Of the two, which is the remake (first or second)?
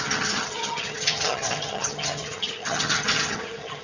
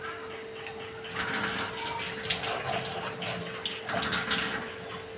first